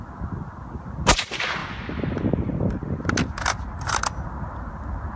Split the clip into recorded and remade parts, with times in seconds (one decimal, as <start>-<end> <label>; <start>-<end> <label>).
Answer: 0.0-5.2 recorded